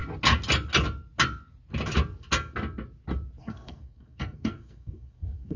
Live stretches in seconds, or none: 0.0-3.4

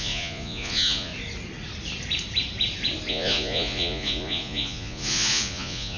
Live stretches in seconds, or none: 1.1-3.1

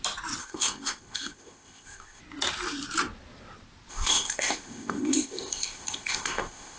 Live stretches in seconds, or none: 0.0-0.4; 2.2-3.9

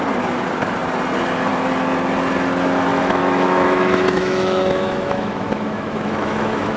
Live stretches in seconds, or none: 0.0-2.9

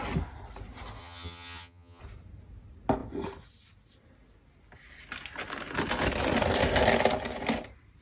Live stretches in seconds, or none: 0.0-1.0; 2.0-8.0

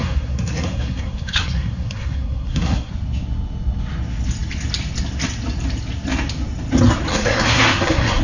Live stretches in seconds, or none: 2.9-7.1